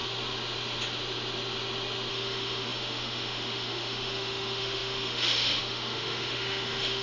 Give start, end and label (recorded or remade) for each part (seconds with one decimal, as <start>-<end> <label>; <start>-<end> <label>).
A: 0.0-2.1 recorded; 2.1-7.0 remade